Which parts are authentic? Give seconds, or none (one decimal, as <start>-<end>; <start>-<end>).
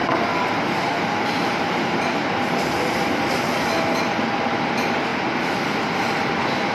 0.0-6.7